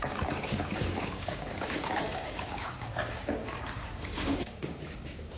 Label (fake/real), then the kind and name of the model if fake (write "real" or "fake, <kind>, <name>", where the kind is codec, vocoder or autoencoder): fake, codec, DAC